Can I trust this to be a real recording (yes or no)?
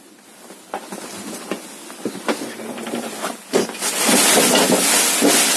yes